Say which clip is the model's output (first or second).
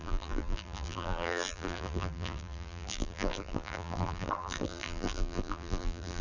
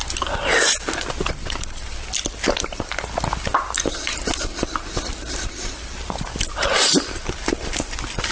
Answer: first